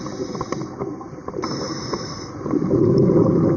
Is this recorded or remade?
recorded